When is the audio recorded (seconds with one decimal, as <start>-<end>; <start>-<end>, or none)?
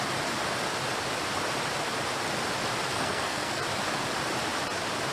0.0-2.9; 3.6-5.1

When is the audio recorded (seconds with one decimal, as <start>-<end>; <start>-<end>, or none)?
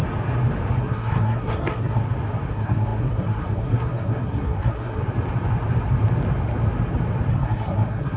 0.0-0.8; 2.0-2.5; 5.0-7.3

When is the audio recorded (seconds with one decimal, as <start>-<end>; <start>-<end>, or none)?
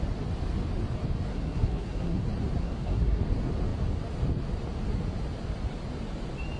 0.0-1.3; 2.2-2.6; 3.2-6.6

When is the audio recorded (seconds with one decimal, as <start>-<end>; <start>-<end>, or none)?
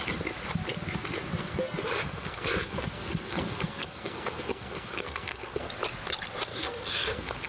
0.0-1.4; 5.7-6.5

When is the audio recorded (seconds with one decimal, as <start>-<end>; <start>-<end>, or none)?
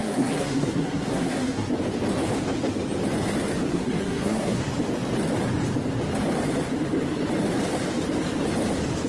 1.7-3.7; 4.6-9.1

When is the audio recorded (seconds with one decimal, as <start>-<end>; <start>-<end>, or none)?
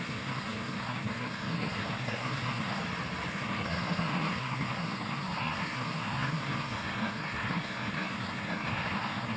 2.8-3.3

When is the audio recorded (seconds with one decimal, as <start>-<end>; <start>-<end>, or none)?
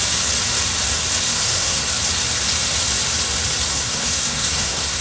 0.0-1.3; 1.9-3.7